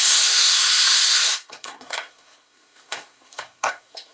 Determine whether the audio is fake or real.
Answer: fake